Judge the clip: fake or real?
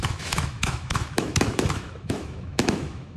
fake